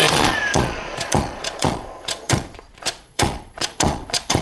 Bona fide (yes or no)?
no